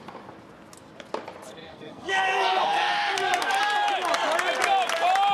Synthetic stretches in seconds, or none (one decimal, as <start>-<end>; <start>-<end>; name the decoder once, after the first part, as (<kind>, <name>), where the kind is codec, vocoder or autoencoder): 1.6-3.6 (codec, SNAC)